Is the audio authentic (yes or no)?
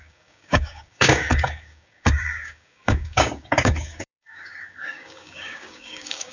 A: no